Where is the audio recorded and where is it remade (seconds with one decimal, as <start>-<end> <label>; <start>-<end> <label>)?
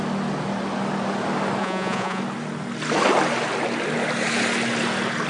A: 0.0-1.6 recorded; 1.6-2.2 remade; 2.2-5.3 recorded